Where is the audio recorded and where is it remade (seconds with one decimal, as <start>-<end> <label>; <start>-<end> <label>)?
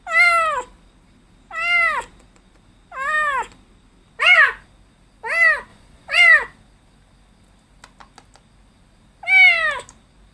0.0-5.7 recorded; 5.7-6.2 remade; 6.2-10.3 recorded